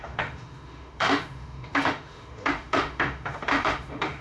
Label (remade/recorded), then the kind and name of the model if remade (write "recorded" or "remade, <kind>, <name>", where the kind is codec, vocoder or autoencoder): remade, autoencoder, DAC-VAE